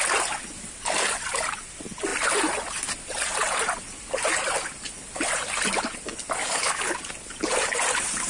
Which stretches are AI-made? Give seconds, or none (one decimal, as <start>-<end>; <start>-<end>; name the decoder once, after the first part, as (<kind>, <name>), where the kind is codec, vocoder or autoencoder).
6.4-7.0 (codec, DAC)